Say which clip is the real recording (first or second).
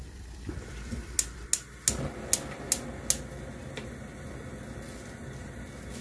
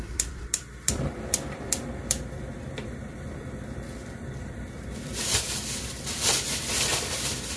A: first